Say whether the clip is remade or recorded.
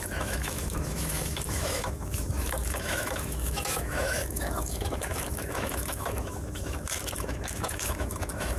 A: remade